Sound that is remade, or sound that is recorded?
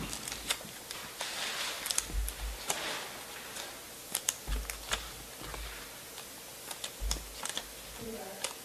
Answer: recorded